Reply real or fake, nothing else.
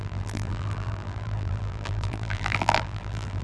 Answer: fake